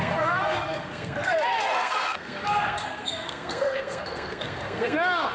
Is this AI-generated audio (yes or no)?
yes